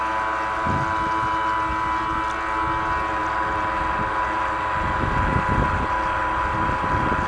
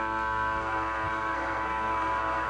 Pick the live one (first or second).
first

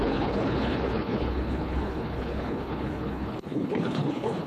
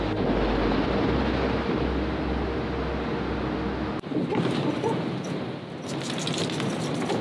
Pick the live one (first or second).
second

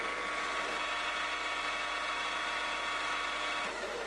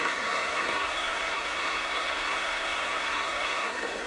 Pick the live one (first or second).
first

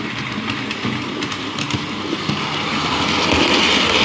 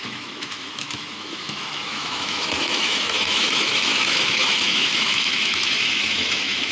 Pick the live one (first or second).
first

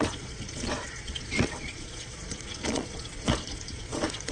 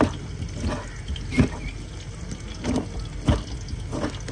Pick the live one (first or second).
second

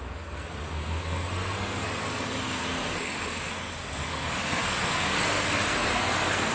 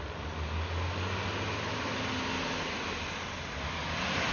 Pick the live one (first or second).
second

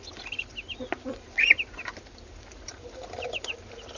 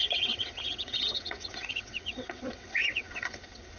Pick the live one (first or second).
first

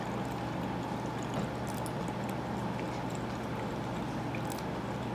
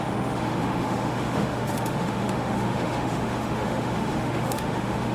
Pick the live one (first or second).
first